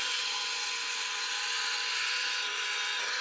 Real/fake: fake